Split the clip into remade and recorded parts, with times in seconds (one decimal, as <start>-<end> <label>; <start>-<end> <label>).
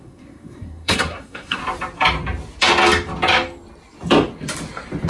0.0-1.6 remade; 1.6-5.1 recorded